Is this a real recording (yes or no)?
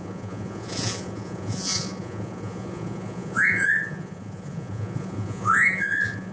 no